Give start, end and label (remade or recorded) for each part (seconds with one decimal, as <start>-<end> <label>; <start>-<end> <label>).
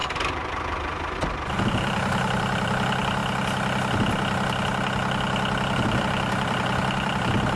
0.0-1.8 recorded; 1.8-3.2 remade; 3.2-6.0 recorded; 6.0-7.6 remade